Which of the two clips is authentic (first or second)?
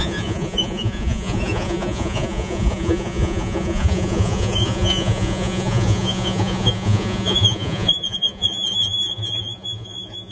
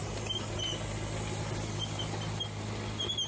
second